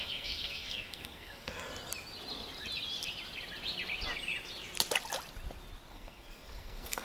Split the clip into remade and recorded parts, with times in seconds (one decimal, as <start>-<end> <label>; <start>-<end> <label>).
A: 0.0-1.7 remade; 1.7-5.9 recorded; 5.9-7.0 remade